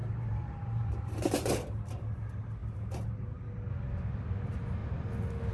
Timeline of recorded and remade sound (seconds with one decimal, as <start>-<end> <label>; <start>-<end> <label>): 0.0-1.9 remade; 1.9-2.6 recorded; 2.6-3.4 remade; 3.4-5.5 recorded